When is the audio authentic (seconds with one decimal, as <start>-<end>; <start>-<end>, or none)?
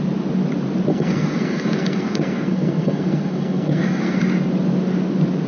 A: 0.0-0.9; 4.2-5.5